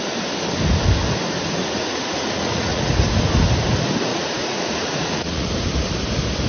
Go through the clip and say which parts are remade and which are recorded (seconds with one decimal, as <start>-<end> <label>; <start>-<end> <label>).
0.0-1.6 recorded; 1.6-2.9 remade; 2.9-4.1 recorded; 4.1-5.5 remade; 5.5-6.5 recorded